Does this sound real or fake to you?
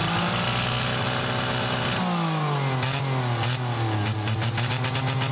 real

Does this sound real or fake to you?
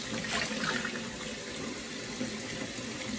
real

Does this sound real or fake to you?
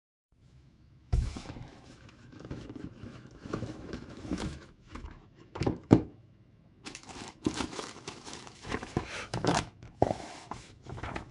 fake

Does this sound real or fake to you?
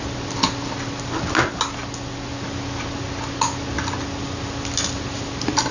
real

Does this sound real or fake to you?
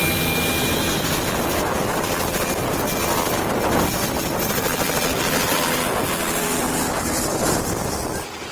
real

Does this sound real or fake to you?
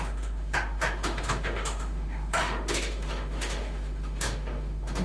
fake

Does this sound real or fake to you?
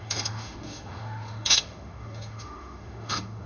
fake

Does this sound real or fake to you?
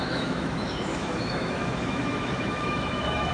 fake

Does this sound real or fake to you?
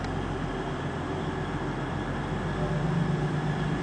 real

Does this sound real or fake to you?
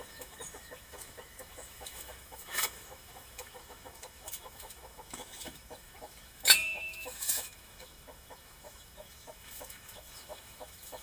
fake